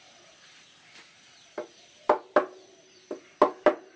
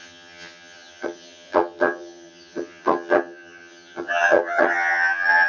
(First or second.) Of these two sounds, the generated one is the second